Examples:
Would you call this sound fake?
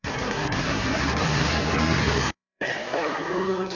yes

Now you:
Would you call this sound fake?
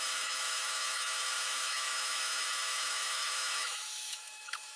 yes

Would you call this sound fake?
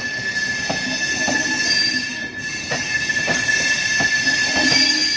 no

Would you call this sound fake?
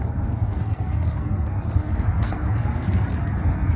yes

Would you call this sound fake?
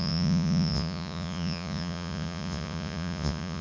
yes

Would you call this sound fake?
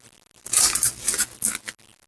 no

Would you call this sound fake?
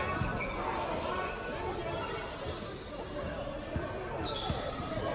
no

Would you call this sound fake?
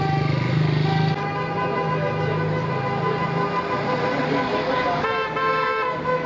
no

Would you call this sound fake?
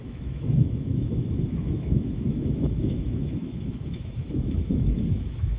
yes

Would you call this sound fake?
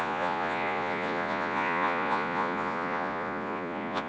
yes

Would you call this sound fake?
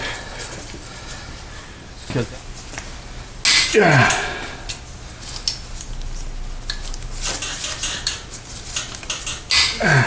no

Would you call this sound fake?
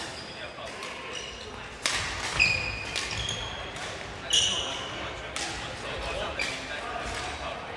no